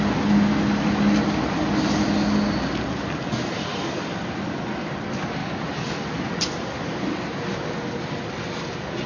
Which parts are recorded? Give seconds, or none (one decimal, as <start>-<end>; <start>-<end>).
0.0-9.1